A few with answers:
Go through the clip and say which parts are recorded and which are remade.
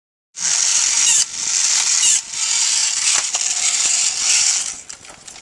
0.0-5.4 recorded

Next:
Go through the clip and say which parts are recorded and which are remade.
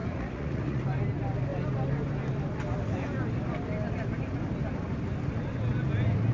0.0-0.8 remade; 0.8-6.3 recorded